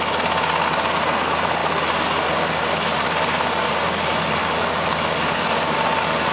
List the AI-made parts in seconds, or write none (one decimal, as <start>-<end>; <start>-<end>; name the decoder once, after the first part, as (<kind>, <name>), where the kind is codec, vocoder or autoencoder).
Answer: 4.4-5.5 (codec, DAC)

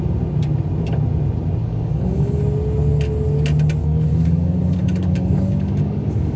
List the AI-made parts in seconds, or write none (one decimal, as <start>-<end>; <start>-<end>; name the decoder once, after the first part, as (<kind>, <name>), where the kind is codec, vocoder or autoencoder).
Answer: 1.6-2.4 (codec, DAC); 3.8-6.4